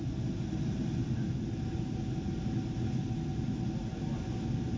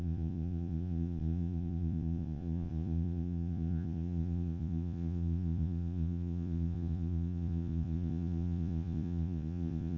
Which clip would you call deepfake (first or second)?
second